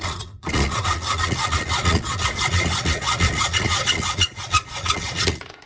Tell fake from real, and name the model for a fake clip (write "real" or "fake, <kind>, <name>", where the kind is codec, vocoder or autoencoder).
fake, vocoder, Vocos